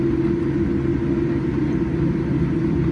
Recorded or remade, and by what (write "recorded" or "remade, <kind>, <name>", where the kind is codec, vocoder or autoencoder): recorded